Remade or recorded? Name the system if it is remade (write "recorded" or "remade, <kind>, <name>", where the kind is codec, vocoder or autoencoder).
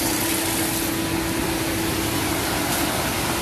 recorded